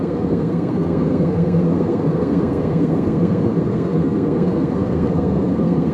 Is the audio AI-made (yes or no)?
yes